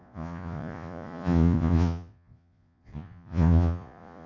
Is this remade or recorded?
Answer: remade